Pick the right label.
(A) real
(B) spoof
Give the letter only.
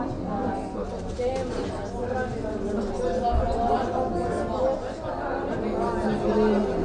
A